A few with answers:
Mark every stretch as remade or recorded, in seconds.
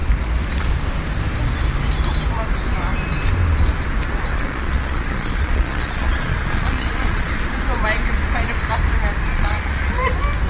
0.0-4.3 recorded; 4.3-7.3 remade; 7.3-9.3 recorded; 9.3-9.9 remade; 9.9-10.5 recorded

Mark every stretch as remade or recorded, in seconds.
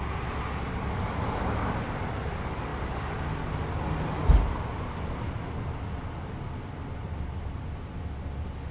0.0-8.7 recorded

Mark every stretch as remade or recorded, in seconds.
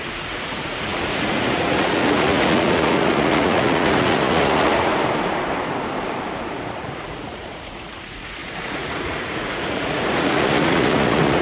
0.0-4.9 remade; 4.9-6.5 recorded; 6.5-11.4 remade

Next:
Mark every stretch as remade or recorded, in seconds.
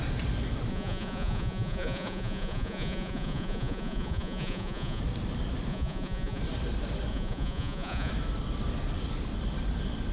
0.0-0.7 recorded; 0.7-5.0 remade; 5.0-5.7 recorded; 5.7-6.4 remade; 6.4-7.1 recorded; 7.1-8.1 remade; 8.1-10.1 recorded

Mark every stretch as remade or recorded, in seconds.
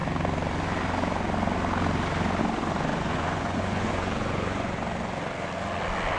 0.0-2.9 recorded; 2.9-4.8 remade; 4.8-6.2 recorded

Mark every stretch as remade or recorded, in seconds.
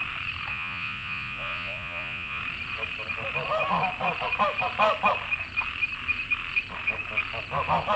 0.0-0.5 recorded; 0.5-2.4 remade; 2.4-8.0 recorded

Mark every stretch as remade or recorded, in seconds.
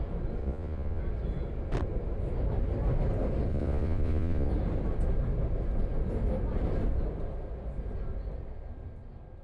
0.0-0.4 recorded; 0.4-1.0 remade; 1.0-3.5 recorded; 3.5-4.5 remade; 4.5-9.4 recorded